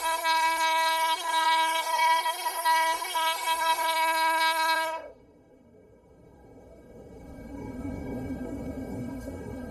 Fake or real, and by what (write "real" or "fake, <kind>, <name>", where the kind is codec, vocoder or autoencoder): fake, codec, SNAC